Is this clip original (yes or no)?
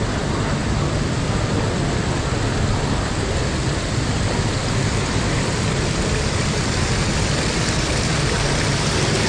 yes